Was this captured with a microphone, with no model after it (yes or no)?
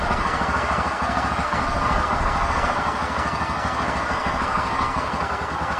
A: no